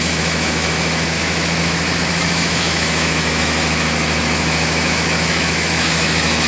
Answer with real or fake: fake